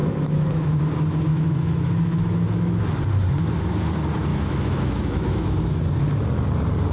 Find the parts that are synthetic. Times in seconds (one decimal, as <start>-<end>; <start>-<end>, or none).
0.0-0.8; 1.3-2.8; 4.3-5.6